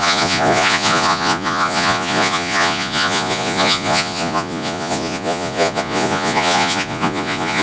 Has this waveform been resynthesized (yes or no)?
yes